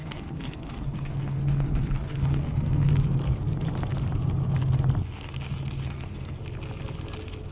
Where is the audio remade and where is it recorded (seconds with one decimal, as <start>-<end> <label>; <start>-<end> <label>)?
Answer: 0.0-2.9 remade; 2.9-5.8 recorded; 5.8-6.4 remade; 6.4-7.5 recorded